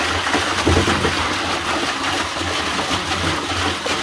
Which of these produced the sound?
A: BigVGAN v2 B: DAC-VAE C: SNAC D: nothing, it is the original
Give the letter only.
D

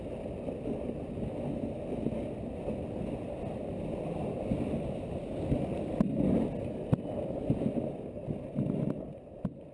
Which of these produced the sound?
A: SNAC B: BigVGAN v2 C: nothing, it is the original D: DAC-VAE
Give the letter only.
C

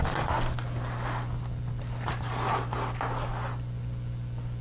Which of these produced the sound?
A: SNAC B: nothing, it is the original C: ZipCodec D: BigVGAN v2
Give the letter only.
B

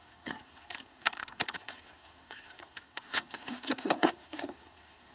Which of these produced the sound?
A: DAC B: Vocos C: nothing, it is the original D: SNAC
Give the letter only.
D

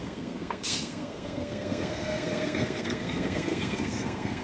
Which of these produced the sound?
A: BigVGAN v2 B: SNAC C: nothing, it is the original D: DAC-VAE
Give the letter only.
B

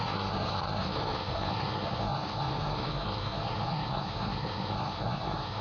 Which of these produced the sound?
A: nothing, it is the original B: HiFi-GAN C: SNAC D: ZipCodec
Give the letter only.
C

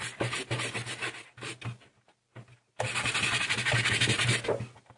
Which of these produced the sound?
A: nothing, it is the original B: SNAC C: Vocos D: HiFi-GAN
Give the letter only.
A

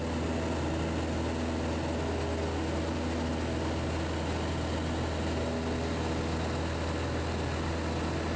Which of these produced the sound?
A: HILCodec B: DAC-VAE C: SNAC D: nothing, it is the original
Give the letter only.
D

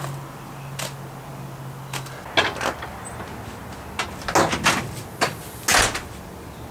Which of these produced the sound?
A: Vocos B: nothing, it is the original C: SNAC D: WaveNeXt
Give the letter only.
B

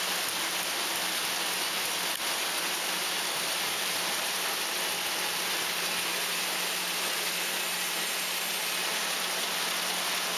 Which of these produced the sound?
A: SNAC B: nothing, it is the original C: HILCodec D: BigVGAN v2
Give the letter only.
B